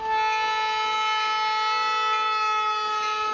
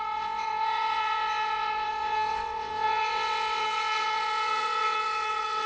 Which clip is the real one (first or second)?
first